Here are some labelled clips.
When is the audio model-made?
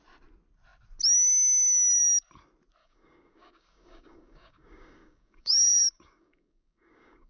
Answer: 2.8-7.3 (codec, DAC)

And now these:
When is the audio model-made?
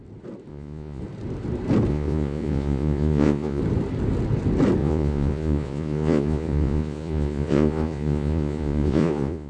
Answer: 0.5-1.0 (vocoder, Vocos); 1.9-3.6; 4.8-9.5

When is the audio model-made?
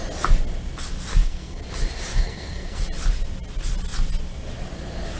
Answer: 1.1-1.6 (codec, SNAC); 2.1-2.8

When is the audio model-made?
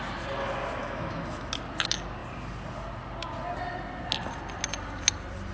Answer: 0.8-1.5 (autoencoder, DAC-VAE)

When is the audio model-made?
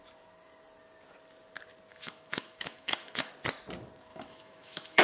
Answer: 1.9-3.3 (autoencoder, DAC-VAE); 4.1-5.0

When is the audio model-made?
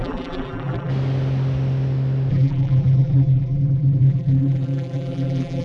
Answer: 0.0-0.9 (vocoder, BigVGAN v2); 2.3-5.6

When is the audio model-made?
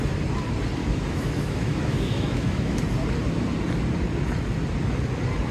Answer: 0.8-2.8 (autoencoder, DAC-VAE)